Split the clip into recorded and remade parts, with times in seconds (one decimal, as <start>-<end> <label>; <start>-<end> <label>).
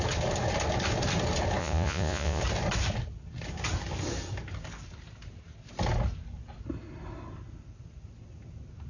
0.0-1.6 recorded; 1.6-2.4 remade; 2.4-8.9 recorded